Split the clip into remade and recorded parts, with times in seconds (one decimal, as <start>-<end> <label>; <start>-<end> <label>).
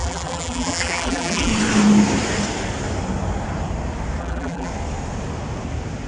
0.0-1.5 remade; 1.5-4.2 recorded; 4.2-4.7 remade; 4.7-6.1 recorded